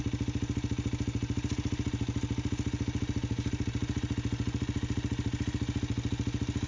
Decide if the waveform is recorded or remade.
recorded